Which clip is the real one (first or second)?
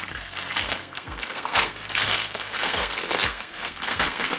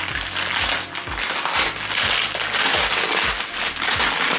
second